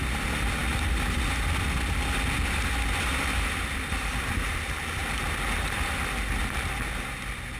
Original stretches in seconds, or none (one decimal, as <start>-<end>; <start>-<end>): 0.0-7.6